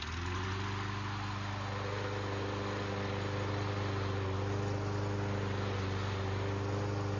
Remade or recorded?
recorded